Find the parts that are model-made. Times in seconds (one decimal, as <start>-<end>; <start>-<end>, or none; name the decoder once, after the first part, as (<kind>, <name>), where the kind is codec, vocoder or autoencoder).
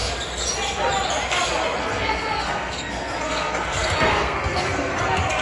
1.8-5.0 (codec, SNAC)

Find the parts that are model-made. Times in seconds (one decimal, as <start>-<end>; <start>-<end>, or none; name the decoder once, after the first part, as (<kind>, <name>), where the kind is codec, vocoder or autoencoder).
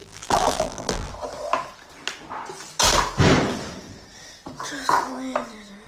0.0-1.1 (vocoder, BigVGAN v2)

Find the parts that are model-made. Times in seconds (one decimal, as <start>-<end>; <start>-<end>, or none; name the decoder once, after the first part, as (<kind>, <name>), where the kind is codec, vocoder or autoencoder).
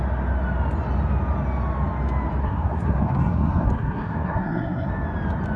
2.4-4.9 (codec, SNAC)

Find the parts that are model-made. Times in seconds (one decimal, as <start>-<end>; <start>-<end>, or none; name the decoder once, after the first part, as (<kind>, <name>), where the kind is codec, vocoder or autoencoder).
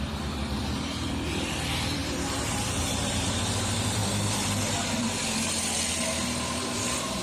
0.0-7.2 (vocoder, BigVGAN v2)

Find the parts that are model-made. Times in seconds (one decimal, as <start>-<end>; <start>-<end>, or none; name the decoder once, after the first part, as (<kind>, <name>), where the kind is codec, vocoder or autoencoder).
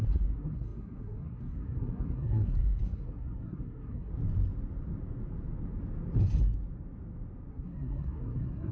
0.0-4.1 (codec, SNAC); 7.5-8.7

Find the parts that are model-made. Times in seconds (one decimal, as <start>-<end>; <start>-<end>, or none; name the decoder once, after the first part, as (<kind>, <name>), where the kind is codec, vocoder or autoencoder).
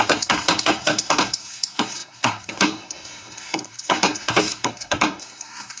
0.0-5.8 (codec, SNAC)